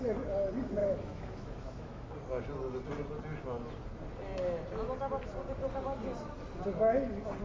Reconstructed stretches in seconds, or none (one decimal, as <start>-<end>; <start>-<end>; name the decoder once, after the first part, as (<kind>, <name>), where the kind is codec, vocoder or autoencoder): 0.8-2.1 (autoencoder, DAC-VAE)

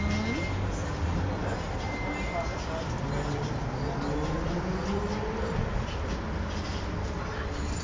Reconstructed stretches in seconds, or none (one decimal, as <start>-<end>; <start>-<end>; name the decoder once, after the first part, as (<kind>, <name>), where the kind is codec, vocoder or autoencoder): none

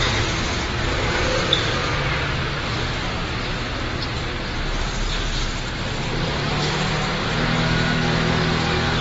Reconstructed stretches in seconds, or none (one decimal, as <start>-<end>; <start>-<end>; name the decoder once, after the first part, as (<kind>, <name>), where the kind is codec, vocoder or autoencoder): none

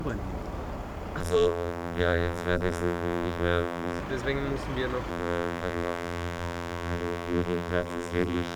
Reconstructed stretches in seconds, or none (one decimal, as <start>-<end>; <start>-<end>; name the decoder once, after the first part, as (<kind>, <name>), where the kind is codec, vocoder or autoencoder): 1.2-4.0 (vocoder, BigVGAN v2); 5.1-8.6

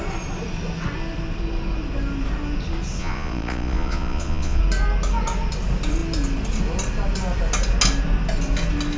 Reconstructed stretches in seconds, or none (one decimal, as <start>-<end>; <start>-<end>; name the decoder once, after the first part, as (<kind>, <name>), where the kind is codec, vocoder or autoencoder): 3.0-4.6 (vocoder, Vocos)